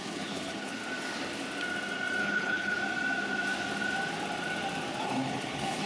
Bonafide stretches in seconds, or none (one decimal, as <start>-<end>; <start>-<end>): 0.8-2.2; 2.8-5.0